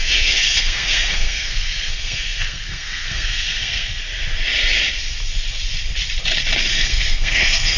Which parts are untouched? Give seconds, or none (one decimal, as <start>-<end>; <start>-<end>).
4.0-6.7